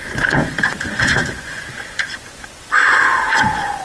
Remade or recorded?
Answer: remade